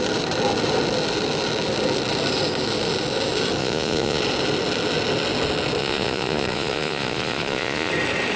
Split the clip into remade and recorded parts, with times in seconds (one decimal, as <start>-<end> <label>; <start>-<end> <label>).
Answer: 0.0-3.6 recorded; 3.6-4.2 remade; 4.2-5.8 recorded; 5.8-7.9 remade; 7.9-8.4 recorded